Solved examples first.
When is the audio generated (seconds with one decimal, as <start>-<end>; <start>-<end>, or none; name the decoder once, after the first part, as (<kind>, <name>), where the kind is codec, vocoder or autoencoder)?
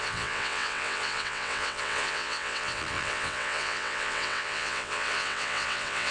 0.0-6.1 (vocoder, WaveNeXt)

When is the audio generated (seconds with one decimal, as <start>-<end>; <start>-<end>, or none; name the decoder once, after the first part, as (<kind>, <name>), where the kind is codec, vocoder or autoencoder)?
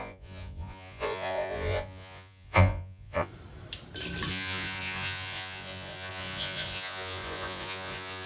0.0-3.3 (vocoder, Vocos); 4.3-8.3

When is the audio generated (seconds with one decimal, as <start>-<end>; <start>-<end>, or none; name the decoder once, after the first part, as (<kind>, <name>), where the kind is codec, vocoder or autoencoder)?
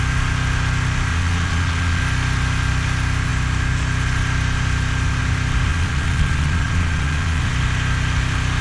1.1-2.0 (vocoder, Vocos); 5.7-7.4